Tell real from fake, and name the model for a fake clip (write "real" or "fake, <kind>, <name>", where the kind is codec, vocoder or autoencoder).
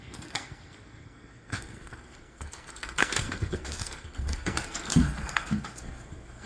fake, codec, SNAC